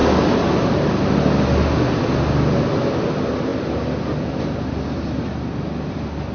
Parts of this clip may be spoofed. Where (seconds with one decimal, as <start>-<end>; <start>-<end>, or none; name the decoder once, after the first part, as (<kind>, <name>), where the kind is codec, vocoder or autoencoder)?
none